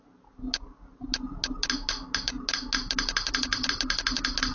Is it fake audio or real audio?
real